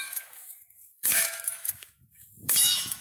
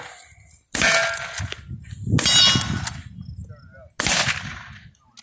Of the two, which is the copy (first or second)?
first